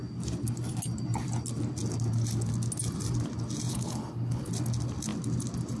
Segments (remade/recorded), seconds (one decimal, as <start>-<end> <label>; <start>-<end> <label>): 0.0-3.7 recorded; 3.7-4.5 remade; 4.5-5.8 recorded